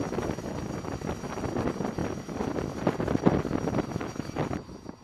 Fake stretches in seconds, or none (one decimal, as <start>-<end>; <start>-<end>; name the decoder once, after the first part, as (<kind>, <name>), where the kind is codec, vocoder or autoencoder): none

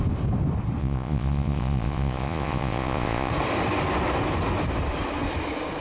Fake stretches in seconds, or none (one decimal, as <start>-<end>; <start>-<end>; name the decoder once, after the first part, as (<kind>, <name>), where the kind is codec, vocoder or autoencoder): 0.8-3.3 (vocoder, Vocos)

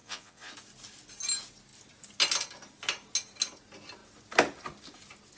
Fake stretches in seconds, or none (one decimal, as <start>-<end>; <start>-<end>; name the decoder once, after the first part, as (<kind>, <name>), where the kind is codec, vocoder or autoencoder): 0.0-0.5 (vocoder, Vocos)

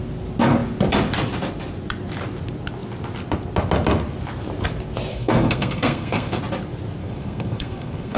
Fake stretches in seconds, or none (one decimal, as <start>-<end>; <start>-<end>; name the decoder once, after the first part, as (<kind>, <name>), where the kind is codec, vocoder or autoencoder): 5.1-6.4 (codec, SNAC); 7.0-8.2

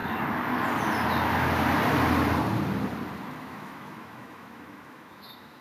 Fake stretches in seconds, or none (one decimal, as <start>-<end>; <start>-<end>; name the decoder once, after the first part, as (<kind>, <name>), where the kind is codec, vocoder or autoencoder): 3.4-5.6 (autoencoder, DAC-VAE)